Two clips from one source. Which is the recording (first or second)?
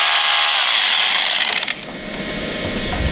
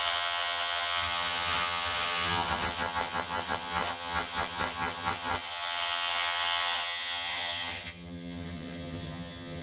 first